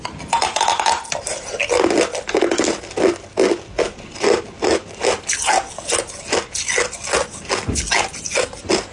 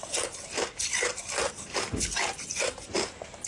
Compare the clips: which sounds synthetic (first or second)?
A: second